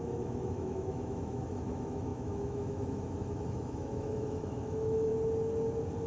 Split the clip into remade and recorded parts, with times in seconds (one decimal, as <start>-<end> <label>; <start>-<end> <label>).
0.0-5.1 remade; 5.1-6.1 recorded